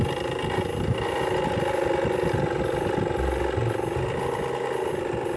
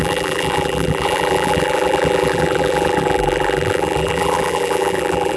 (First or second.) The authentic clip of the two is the first